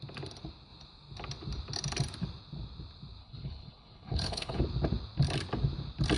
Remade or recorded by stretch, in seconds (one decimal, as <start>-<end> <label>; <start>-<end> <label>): 0.0-3.2 recorded; 3.2-4.6 remade; 4.6-6.2 recorded